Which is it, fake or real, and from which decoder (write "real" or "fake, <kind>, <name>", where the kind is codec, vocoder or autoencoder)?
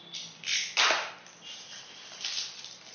real